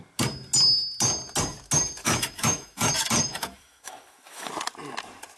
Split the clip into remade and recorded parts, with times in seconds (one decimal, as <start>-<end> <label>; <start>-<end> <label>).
0.0-2.0 recorded; 2.0-2.9 remade; 2.9-3.3 recorded; 3.3-4.5 remade; 4.5-5.4 recorded